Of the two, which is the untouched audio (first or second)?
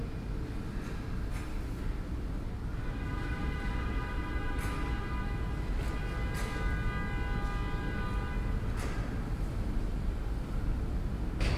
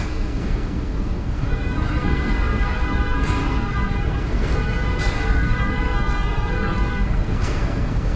first